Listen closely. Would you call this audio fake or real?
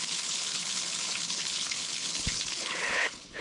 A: fake